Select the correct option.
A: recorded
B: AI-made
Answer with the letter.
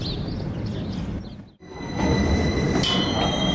A